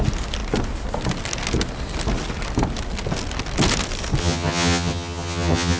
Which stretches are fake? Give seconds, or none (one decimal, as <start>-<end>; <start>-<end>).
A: 4.2-5.8